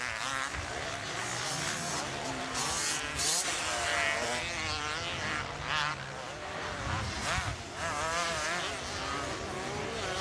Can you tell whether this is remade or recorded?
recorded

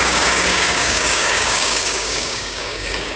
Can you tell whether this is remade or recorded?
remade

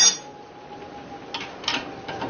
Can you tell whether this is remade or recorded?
recorded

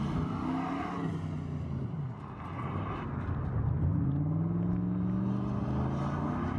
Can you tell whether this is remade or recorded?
recorded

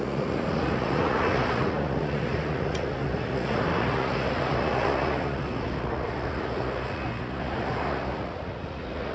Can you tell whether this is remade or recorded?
remade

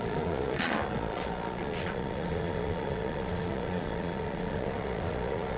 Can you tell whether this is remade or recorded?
remade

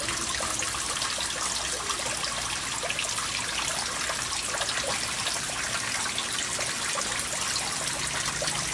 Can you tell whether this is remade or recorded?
recorded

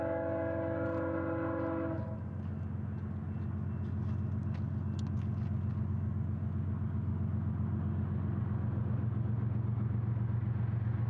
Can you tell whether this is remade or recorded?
recorded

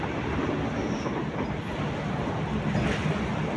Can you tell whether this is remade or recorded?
recorded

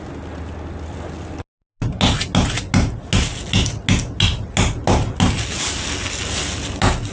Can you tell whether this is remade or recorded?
recorded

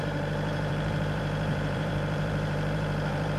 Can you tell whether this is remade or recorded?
remade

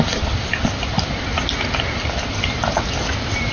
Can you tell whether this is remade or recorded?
recorded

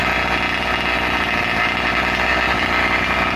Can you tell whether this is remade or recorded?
recorded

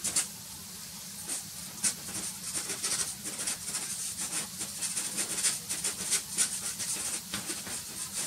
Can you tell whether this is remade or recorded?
recorded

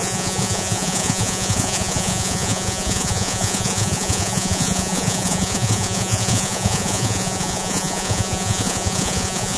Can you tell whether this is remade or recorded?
remade